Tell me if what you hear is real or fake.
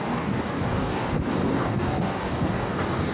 fake